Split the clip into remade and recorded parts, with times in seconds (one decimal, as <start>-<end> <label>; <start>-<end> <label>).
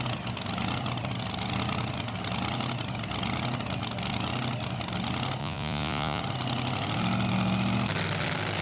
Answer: 0.0-5.4 recorded; 5.4-6.2 remade; 6.2-8.6 recorded